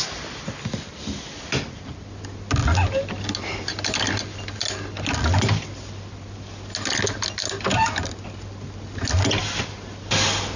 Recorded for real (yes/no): yes